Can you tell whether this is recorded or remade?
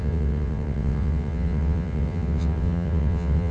remade